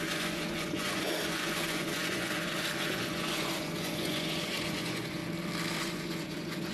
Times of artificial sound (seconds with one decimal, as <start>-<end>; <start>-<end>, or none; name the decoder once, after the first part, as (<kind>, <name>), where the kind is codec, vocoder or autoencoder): 0.0-5.2 (vocoder, Vocos); 5.8-6.7